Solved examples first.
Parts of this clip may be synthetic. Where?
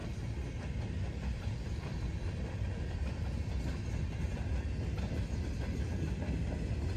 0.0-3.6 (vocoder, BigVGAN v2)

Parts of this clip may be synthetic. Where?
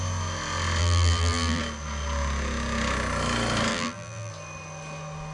0.8-1.6 (vocoder, BigVGAN v2); 3.7-4.3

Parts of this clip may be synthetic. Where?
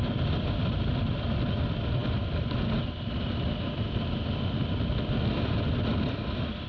none